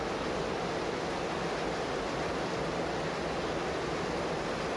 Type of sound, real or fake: real